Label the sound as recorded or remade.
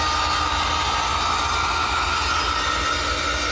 recorded